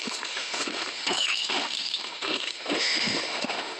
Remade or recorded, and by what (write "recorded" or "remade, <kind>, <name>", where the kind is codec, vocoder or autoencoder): remade, autoencoder, DAC-VAE